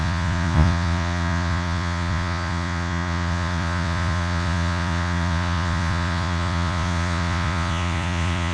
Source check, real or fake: fake